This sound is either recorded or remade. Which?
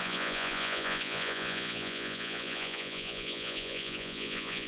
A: remade